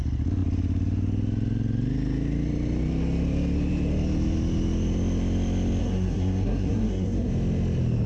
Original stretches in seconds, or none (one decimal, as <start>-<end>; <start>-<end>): 0.0-5.8; 7.3-8.1